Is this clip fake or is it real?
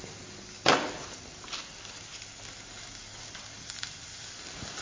real